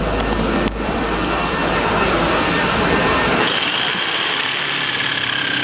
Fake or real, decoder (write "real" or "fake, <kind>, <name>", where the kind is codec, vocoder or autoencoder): fake, vocoder, BigVGAN v2